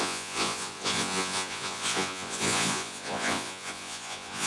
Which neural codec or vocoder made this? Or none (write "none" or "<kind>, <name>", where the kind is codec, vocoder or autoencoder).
vocoder, Vocos